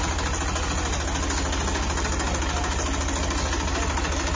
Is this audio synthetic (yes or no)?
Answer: no